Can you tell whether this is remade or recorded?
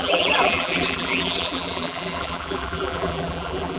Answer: remade